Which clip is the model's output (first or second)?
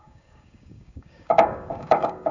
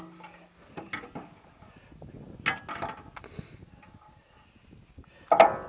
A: first